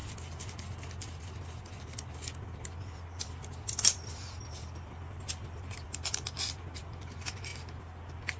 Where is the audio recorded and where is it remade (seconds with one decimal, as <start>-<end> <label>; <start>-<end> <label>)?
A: 0.0-1.2 recorded; 1.2-7.5 remade; 7.5-8.4 recorded